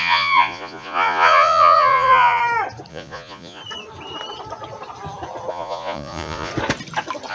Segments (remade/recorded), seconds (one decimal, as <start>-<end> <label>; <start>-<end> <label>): 0.0-2.4 remade; 2.4-2.9 recorded; 2.9-3.6 remade; 3.6-5.5 recorded; 5.5-6.5 remade; 6.5-7.3 recorded